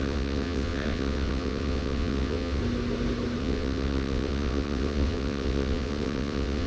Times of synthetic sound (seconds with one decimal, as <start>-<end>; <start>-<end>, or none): 0.0-2.6; 3.4-6.7